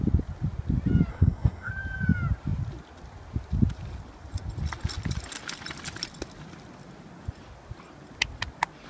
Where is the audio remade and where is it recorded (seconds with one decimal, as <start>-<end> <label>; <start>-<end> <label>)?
0.0-1.1 recorded; 1.1-1.7 remade; 1.7-8.9 recorded